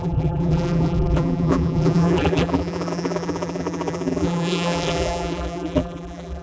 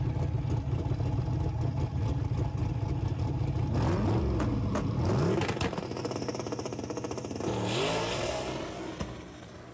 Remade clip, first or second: first